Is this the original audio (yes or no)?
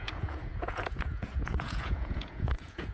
no